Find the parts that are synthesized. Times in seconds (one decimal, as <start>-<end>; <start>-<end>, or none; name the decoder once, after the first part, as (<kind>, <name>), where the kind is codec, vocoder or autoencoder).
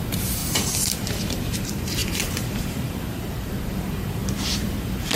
0.0-4.2 (vocoder, BigVGAN v2); 4.8-5.2